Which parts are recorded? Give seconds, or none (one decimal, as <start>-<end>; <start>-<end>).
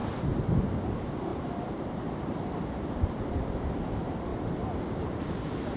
0.0-0.9; 4.3-4.8